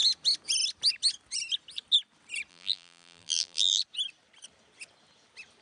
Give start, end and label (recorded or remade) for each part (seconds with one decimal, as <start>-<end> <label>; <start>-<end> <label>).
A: 0.0-2.5 recorded; 2.5-3.8 remade; 3.8-5.6 recorded